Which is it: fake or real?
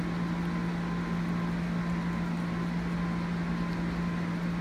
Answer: real